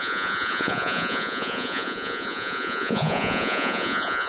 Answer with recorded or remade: remade